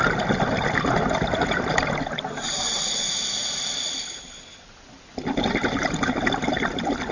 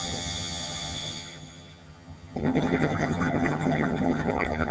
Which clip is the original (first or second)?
first